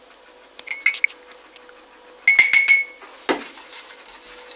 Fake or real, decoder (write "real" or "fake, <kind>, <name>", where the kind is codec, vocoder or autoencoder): real